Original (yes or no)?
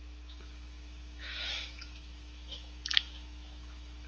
no